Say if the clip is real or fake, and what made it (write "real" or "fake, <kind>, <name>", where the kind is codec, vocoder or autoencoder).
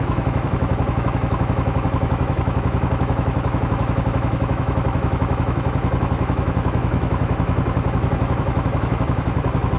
fake, autoencoder, DAC-VAE